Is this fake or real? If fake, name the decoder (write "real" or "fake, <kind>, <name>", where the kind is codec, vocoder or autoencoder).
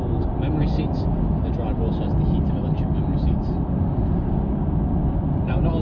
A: real